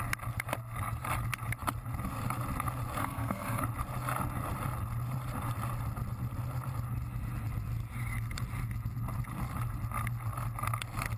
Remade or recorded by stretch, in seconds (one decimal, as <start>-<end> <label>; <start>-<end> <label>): 0.0-3.0 recorded; 3.0-3.6 remade; 3.6-11.2 recorded